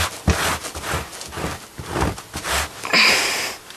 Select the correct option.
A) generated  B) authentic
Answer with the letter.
B